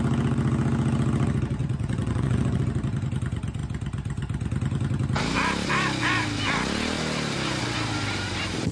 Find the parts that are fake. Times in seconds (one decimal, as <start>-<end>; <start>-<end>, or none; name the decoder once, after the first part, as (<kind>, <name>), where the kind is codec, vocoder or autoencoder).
1.6-2.6 (vocoder, Vocos)